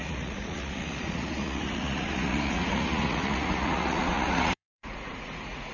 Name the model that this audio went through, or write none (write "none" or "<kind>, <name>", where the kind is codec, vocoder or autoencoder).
vocoder, Vocos